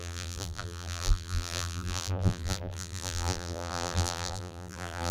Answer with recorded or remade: remade